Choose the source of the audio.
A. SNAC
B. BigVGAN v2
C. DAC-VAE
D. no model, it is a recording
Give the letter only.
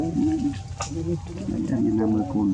D